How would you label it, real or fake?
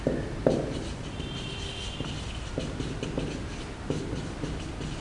real